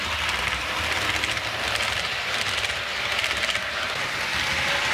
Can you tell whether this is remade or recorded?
recorded